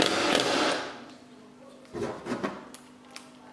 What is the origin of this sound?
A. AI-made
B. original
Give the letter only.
B